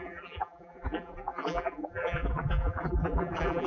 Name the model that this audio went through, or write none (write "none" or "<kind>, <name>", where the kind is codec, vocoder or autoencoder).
vocoder, BigVGAN v2